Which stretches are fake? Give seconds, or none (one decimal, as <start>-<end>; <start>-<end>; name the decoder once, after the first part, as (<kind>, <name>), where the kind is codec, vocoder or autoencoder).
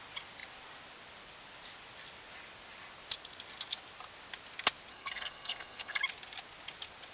4.9-6.0 (codec, SNAC)